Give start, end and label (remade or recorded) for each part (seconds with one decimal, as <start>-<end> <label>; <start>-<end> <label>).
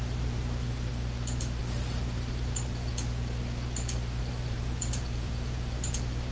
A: 0.0-0.9 remade; 0.9-1.6 recorded; 1.6-2.9 remade; 2.9-4.2 recorded; 4.2-6.3 remade